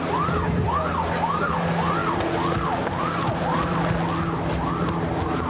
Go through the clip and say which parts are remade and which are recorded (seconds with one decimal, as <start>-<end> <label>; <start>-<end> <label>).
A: 0.0-5.5 recorded